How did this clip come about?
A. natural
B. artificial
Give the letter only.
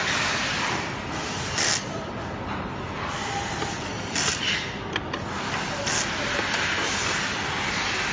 A